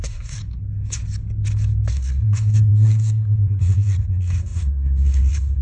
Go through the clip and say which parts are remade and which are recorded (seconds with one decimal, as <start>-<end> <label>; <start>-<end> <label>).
0.0-0.4 remade; 0.4-1.9 recorded; 1.9-5.6 remade